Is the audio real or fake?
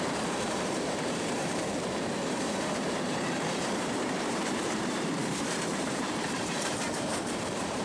fake